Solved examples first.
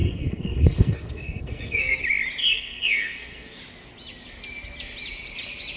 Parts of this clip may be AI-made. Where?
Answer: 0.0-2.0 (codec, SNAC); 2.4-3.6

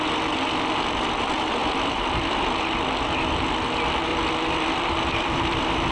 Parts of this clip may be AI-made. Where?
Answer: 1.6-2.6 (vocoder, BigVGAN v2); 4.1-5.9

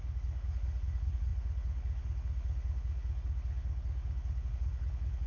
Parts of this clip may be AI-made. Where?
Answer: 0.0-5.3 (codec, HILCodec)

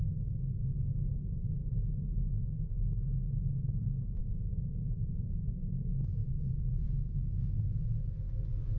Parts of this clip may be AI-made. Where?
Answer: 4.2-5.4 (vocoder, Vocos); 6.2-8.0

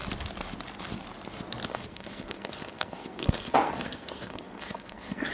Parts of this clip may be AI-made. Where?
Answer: 1.7-5.3 (codec, SNAC)

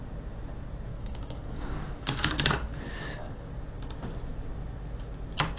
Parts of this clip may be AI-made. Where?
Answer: 0.9-3.5 (codec, DAC)

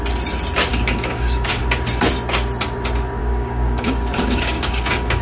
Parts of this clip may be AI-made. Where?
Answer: 0.7-1.6 (codec, DAC); 3.2-5.2

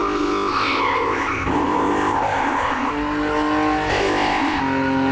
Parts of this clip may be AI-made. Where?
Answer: 0.0-2.9 (codec, ZipCodec); 3.9-4.6